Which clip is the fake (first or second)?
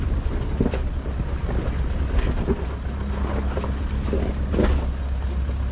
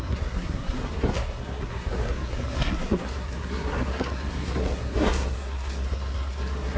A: second